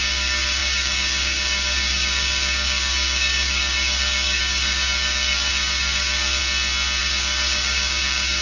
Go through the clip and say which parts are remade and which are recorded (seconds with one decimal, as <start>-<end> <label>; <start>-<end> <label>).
0.0-6.4 remade; 6.4-7.0 recorded; 7.0-8.4 remade